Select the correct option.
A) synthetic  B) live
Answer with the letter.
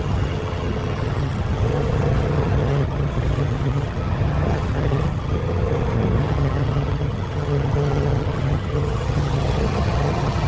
A